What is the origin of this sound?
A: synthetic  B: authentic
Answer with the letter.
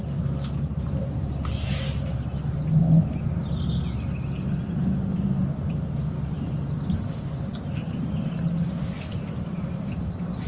B